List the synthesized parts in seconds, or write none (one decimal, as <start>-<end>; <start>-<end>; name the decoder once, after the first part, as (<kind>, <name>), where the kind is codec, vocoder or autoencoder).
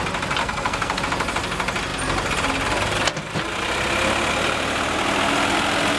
0.4-1.0 (codec, SNAC)